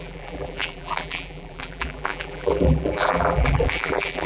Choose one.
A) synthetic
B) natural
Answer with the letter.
A